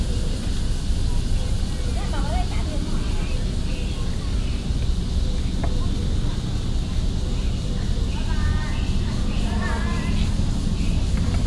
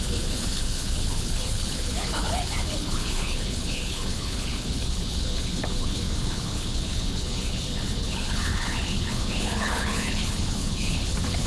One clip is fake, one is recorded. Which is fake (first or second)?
second